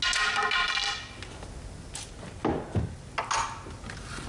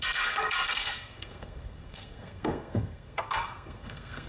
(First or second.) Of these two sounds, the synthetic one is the second